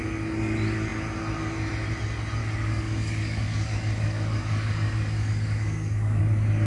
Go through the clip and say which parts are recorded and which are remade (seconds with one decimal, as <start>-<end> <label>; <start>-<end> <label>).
0.0-2.4 recorded; 2.4-6.2 remade; 6.2-6.7 recorded